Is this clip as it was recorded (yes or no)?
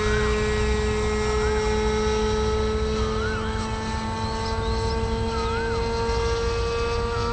yes